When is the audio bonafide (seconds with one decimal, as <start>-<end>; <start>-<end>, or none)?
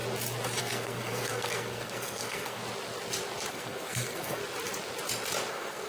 0.0-0.6; 2.6-3.5; 4.4-5.5